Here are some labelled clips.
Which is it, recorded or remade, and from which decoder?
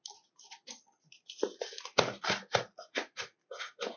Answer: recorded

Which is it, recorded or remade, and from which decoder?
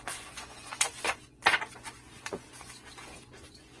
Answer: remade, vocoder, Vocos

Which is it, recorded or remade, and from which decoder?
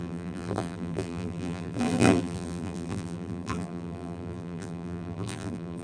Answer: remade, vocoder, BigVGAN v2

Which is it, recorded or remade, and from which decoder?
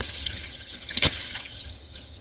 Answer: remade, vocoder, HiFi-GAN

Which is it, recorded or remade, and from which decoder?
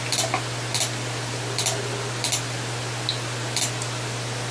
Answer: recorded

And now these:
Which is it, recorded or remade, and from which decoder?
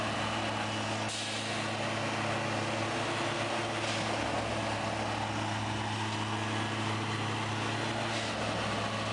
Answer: recorded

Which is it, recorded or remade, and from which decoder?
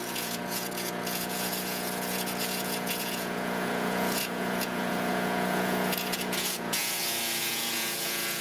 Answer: remade, vocoder, Vocos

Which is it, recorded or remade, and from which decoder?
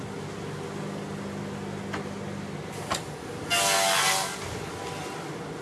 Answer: recorded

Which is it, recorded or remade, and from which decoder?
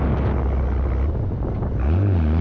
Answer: recorded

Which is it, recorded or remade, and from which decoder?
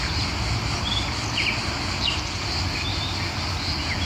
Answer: recorded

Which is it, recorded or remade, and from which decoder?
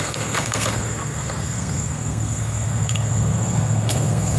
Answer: remade, codec, SNAC